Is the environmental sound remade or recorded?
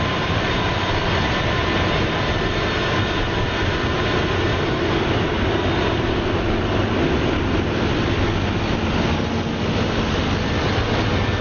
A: recorded